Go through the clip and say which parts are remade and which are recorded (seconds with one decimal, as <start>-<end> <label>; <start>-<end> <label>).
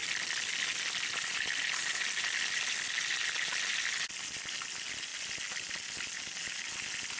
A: 0.0-7.2 recorded